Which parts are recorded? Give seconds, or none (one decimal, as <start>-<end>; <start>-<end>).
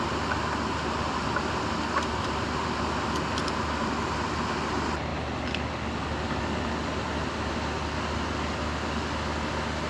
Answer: 0.0-9.9